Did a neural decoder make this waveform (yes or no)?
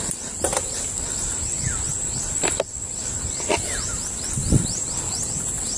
no